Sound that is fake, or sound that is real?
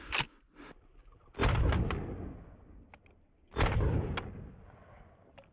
real